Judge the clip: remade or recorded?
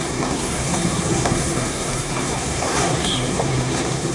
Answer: remade